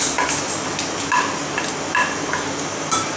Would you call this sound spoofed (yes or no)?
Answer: no